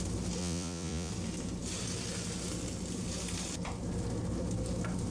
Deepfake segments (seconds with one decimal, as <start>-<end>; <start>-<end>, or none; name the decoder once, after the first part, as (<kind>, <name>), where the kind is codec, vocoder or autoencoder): 0.4-1.1 (vocoder, Vocos)